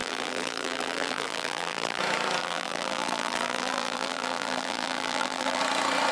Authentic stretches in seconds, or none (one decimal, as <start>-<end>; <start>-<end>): 2.0-2.4; 5.6-6.1